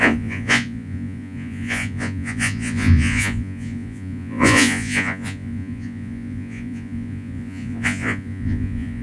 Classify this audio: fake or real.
fake